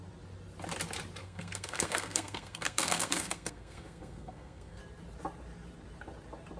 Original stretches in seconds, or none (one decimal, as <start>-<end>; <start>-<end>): 0.0-1.2; 4.8-6.6